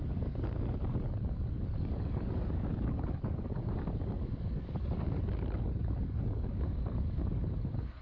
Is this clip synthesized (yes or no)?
yes